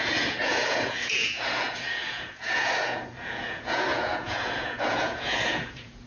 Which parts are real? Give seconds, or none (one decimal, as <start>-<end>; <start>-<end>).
none